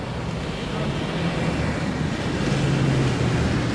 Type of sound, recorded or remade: recorded